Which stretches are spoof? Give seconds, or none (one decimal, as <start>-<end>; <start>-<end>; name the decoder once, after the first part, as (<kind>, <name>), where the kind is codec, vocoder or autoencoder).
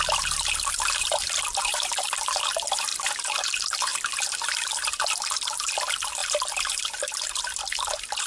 0.0-2.9 (vocoder, BigVGAN v2); 3.5-8.3